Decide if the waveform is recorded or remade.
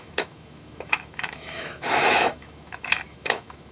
remade